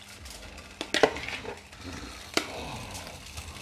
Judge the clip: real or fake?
real